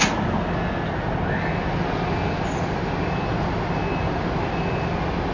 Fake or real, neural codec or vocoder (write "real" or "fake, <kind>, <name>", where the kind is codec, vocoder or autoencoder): real